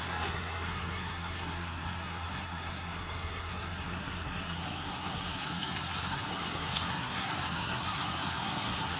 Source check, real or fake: fake